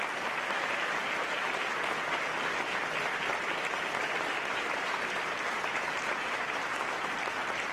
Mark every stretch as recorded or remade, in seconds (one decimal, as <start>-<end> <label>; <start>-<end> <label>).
0.0-4.3 recorded; 4.3-7.1 remade; 7.1-7.7 recorded